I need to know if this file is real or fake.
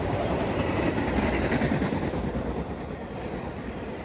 fake